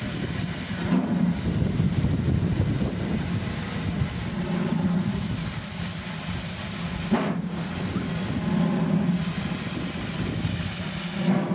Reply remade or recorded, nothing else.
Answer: recorded